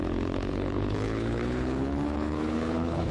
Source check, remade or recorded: remade